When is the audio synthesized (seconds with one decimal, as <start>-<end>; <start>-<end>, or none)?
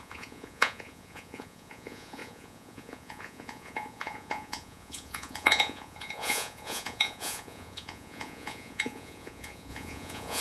0.0-10.4